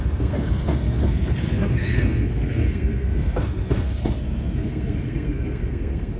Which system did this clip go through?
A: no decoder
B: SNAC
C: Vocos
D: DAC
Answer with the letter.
B